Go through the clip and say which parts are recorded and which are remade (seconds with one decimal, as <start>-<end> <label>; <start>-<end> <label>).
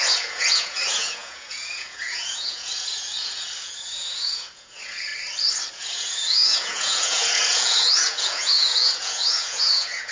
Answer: 0.0-5.1 remade; 5.1-5.7 recorded; 5.7-10.1 remade